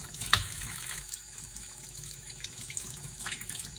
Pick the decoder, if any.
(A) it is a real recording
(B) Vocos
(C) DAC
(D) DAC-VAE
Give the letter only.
D